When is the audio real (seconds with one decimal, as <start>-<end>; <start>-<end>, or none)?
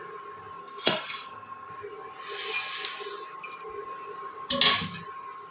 0.0-0.6; 1.7-5.5